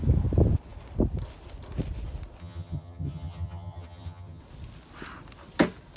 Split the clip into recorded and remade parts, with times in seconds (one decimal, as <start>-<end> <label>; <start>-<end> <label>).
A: 0.0-2.4 recorded; 2.4-4.4 remade; 4.4-6.0 recorded